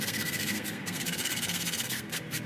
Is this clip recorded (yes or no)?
no